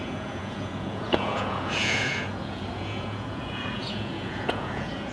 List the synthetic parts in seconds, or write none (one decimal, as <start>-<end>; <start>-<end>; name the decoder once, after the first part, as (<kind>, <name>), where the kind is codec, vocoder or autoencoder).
0.0-5.1 (vocoder, Vocos)